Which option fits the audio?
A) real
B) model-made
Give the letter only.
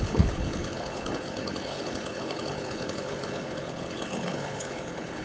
B